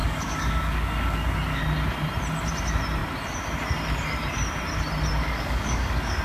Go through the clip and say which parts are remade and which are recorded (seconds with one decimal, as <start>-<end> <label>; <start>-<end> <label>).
0.0-1.6 remade; 1.6-5.2 recorded; 5.2-6.2 remade